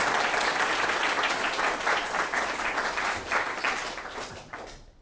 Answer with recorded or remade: remade